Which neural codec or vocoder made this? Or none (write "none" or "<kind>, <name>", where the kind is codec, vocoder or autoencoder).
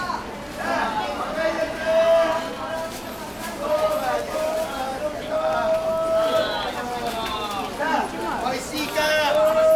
none